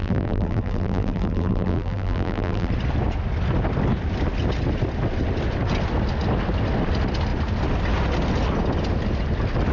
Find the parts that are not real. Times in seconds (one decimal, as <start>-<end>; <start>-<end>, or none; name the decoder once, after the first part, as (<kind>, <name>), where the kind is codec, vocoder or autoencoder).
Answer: 0.0-2.7 (vocoder, BigVGAN v2)